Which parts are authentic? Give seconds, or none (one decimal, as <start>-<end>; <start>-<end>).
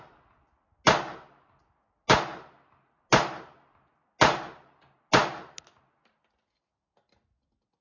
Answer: 0.0-7.8